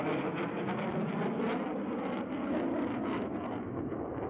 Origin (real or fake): real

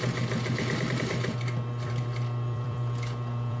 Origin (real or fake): fake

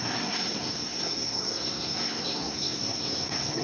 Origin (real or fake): fake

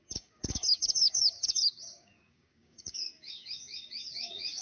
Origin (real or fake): fake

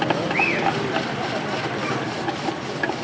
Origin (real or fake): real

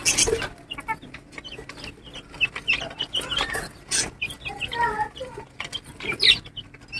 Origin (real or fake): real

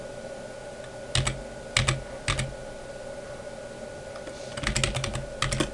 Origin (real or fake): real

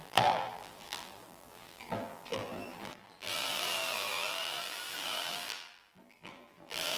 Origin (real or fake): fake